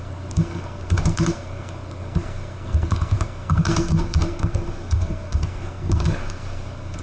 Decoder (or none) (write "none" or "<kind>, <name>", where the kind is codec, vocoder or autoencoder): codec, SNAC